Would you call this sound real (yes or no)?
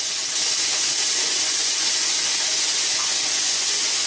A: no